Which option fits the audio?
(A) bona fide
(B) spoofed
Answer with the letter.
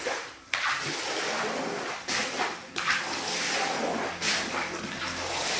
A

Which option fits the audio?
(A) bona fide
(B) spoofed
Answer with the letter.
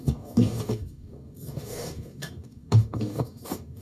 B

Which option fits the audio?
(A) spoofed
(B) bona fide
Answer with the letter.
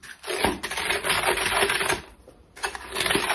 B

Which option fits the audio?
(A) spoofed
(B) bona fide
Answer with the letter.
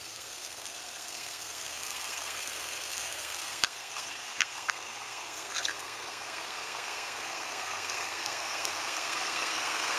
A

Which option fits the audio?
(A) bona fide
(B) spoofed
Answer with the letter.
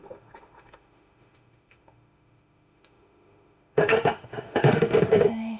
B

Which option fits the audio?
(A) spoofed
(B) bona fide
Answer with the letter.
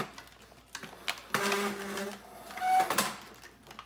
B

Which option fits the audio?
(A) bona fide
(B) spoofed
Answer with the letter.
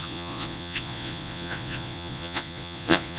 B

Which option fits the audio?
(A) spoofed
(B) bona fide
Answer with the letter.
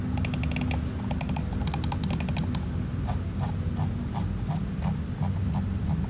B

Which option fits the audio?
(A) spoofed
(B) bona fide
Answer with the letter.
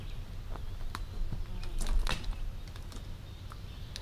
B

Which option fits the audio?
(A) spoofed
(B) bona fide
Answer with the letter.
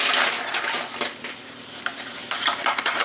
A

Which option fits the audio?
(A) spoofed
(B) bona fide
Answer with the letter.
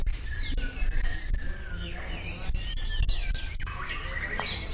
B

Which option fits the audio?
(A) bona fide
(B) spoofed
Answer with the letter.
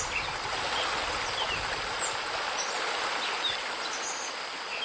A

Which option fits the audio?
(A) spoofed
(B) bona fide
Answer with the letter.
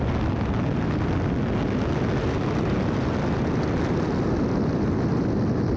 B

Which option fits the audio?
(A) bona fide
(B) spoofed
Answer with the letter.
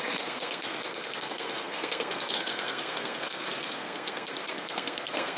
B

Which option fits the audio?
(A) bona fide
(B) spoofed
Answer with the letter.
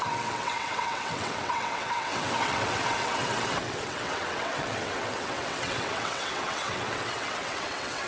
B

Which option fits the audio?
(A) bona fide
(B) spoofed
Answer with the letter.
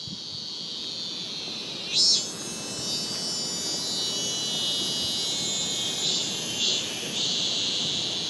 A